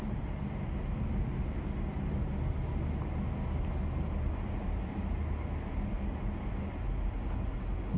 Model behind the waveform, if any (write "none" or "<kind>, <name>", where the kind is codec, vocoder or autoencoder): none